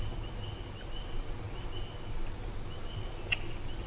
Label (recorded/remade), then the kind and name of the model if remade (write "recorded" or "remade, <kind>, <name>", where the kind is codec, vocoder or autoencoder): recorded